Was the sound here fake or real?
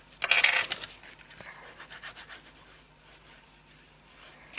real